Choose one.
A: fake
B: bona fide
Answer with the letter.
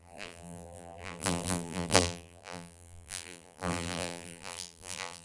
A